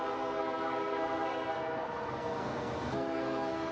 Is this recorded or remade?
remade